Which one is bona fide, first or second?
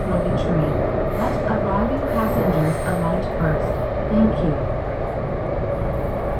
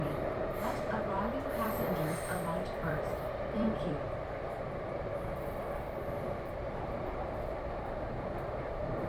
first